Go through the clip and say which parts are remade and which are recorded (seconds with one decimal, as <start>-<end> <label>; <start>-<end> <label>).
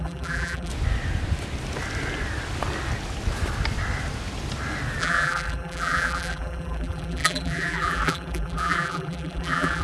0.0-0.7 remade; 0.7-5.0 recorded; 5.0-9.8 remade